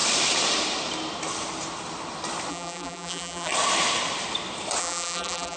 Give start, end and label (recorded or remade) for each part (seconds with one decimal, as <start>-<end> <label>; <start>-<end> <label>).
0.0-2.5 recorded; 2.5-3.5 remade; 3.5-4.8 recorded; 4.8-5.6 remade